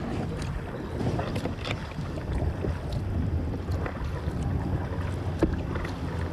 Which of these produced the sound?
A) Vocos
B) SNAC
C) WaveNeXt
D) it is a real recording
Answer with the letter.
D